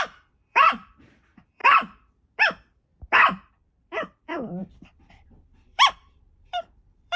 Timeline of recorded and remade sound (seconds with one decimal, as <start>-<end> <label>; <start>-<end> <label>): 0.0-1.6 remade; 1.6-3.5 recorded; 3.5-7.2 remade